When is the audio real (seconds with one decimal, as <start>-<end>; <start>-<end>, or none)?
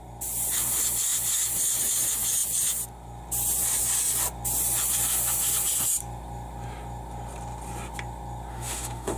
0.0-8.5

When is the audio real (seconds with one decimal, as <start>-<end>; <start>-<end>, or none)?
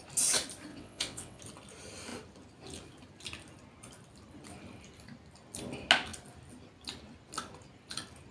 0.0-0.7; 1.4-8.3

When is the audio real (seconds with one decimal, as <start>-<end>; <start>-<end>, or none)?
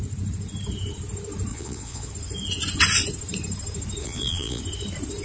0.0-1.5; 2.1-4.0; 4.6-5.2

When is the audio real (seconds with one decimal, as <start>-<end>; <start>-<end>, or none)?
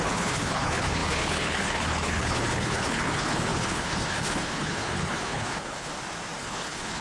5.9-6.4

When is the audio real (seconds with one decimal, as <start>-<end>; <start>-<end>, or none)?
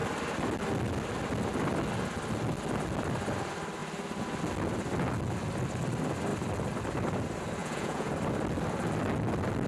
0.0-7.6; 8.1-9.7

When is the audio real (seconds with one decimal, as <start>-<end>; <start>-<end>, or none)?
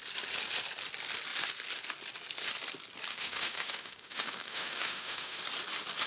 0.0-3.1; 5.4-6.1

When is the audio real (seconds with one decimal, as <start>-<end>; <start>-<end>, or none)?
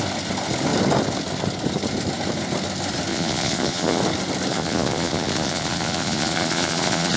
0.0-3.1; 4.0-4.5